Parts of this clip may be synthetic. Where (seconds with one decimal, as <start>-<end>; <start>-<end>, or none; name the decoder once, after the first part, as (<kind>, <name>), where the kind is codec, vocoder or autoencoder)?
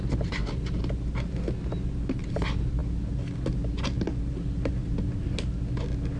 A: none